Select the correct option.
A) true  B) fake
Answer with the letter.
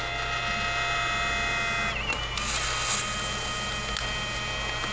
A